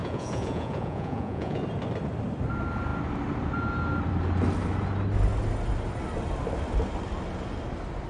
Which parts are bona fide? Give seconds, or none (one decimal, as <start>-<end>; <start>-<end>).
1.6-8.1